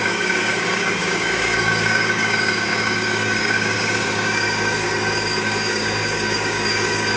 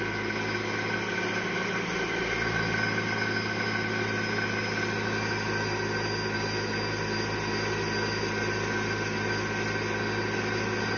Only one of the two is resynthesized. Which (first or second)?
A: first